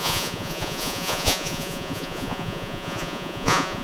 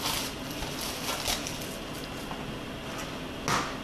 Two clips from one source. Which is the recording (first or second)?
second